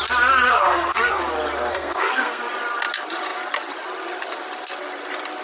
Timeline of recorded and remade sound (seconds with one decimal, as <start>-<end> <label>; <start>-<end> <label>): 0.0-0.5 recorded; 0.5-1.2 remade; 1.2-1.7 recorded; 1.7-2.4 remade; 2.4-5.4 recorded